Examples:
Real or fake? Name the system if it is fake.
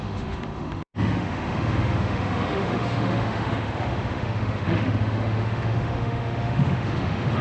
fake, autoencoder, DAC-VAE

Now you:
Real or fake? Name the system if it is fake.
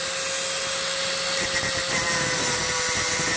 real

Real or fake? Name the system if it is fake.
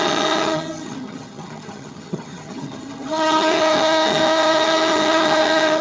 fake, vocoder, HiFi-GAN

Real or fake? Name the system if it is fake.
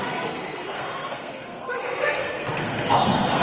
fake, codec, SNAC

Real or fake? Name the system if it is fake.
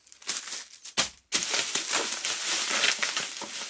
real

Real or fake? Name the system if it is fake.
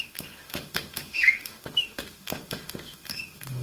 fake, autoencoder, DAC-VAE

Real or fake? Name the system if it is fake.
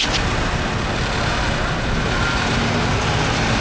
real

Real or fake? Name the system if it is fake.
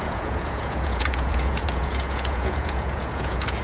fake, vocoder, Vocos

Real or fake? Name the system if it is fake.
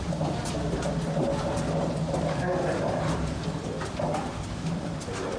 fake, vocoder, BigVGAN v2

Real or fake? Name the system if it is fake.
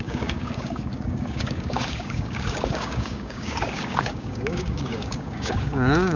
fake, codec, DAC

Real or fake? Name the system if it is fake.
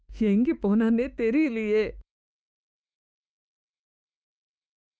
fake, autoencoder, DAC-VAE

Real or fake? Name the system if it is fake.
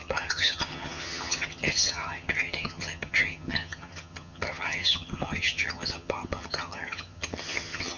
fake, vocoder, HiFi-GAN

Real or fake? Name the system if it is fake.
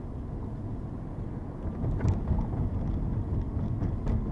real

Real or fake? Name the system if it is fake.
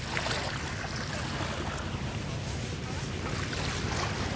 real